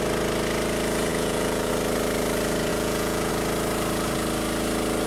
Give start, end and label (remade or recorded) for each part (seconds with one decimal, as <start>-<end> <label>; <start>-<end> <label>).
0.0-1.1 recorded; 1.1-1.7 remade; 1.7-2.7 recorded; 2.7-3.3 remade; 3.3-5.1 recorded